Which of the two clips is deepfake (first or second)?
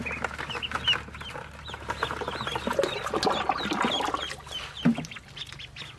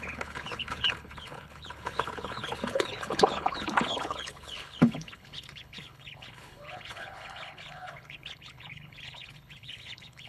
second